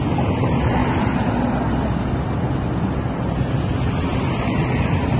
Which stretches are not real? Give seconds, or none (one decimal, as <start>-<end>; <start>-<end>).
0.0-0.8; 2.8-5.2